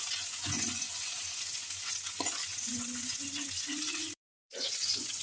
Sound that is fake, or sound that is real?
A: fake